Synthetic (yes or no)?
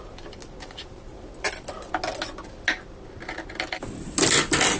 no